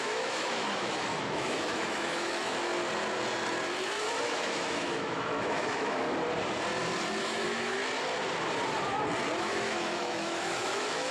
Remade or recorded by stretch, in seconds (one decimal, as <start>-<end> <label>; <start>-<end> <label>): 0.0-2.7 remade; 2.7-4.2 recorded; 4.2-6.0 remade; 6.0-7.2 recorded; 7.2-7.8 remade; 7.8-9.4 recorded; 9.4-11.1 remade